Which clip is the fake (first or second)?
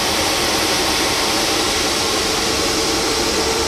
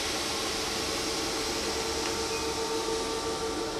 first